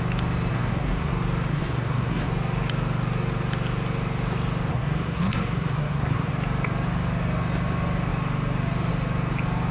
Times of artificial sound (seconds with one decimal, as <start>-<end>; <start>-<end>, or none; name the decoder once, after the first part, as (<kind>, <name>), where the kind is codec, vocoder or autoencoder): 0.5-1.1 (codec, SNAC); 1.5-2.3; 4.7-6.3